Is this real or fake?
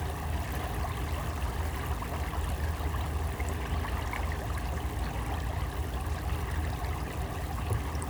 real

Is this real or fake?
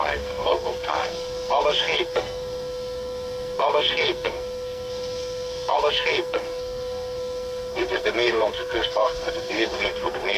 fake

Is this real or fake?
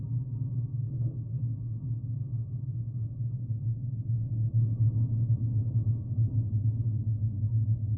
real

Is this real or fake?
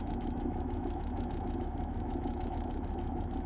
fake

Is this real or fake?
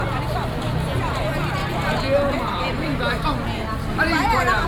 real